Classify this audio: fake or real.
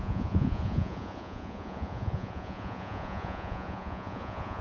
fake